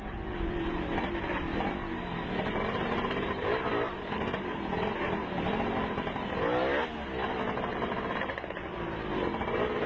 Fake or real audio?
real